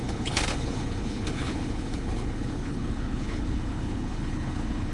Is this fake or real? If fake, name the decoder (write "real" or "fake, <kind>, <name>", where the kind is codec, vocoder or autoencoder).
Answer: fake, codec, HILCodec